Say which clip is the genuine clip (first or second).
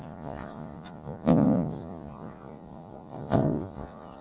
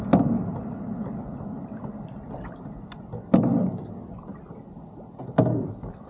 second